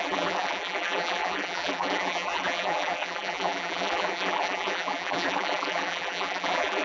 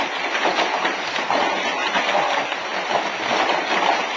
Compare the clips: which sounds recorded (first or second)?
second